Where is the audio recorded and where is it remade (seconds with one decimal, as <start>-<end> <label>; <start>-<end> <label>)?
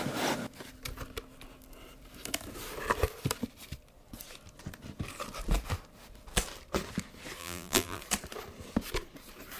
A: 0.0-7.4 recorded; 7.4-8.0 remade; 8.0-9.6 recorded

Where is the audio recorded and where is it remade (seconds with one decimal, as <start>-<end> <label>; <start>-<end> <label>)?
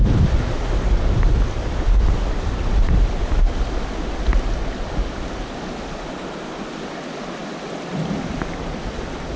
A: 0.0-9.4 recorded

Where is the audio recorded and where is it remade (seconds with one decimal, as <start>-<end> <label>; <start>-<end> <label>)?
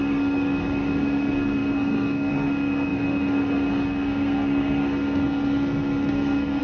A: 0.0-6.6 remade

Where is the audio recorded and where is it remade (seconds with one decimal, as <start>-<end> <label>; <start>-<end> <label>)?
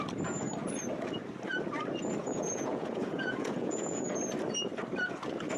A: 0.0-2.2 recorded; 2.2-4.2 remade; 4.2-5.6 recorded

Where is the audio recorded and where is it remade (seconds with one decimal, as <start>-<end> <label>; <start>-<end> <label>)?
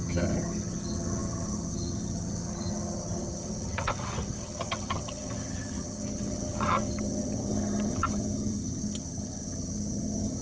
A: 0.0-10.4 remade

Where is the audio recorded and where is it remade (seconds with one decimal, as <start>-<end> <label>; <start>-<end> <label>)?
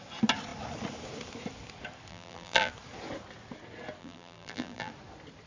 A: 0.0-2.1 recorded; 2.1-2.7 remade; 2.7-4.0 recorded; 4.0-4.9 remade; 4.9-5.5 recorded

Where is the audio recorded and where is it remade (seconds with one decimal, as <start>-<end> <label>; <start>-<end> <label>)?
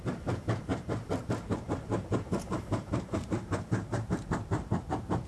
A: 0.0-5.3 remade